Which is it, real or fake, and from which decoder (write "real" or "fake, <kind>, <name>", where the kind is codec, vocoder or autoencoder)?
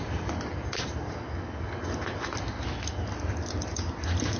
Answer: real